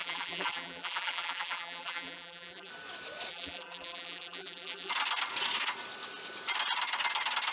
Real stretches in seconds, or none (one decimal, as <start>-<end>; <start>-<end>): 2.7-3.3; 4.9-7.5